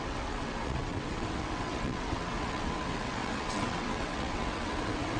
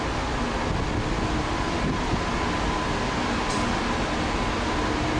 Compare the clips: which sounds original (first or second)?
second